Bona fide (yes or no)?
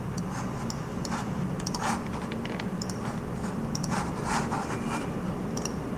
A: yes